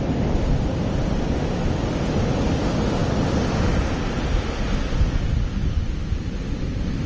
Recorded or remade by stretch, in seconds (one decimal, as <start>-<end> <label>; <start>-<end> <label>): 0.0-7.1 recorded